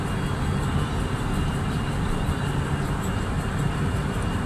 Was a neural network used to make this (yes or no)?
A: no